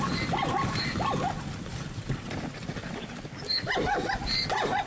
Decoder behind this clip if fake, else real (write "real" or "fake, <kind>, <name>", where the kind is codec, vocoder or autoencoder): real